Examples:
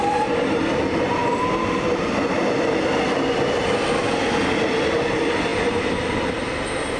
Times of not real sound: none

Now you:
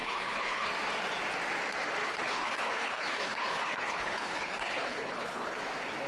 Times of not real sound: 0.0-0.7 (codec, HILCodec); 2.0-5.6